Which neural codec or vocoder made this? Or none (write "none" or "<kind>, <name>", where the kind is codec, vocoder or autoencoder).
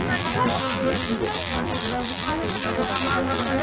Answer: vocoder, BigVGAN v2